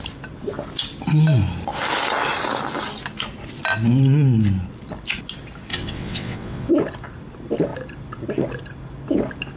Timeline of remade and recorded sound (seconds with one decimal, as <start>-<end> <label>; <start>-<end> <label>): 0.0-5.7 recorded; 5.7-6.7 remade; 6.7-9.6 recorded